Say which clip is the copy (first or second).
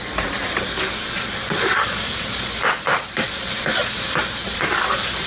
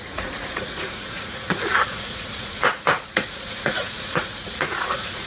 second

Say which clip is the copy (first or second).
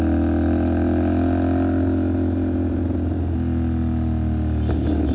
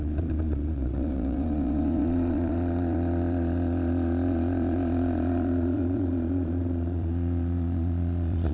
second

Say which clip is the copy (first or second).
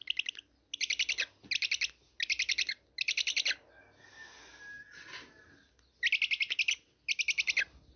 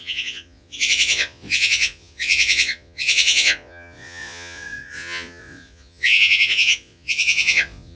second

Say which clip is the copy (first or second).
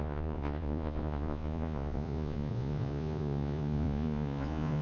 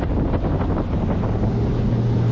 first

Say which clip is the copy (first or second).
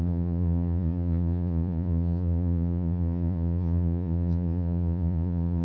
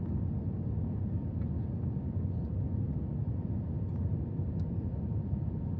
first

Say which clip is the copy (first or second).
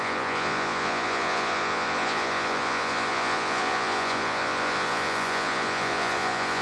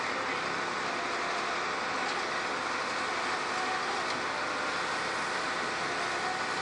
first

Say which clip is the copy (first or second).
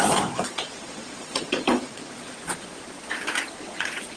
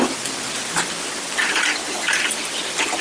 first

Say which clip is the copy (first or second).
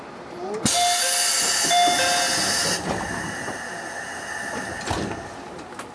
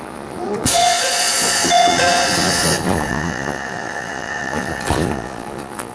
second